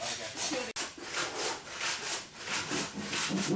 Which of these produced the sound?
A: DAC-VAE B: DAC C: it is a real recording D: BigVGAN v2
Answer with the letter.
C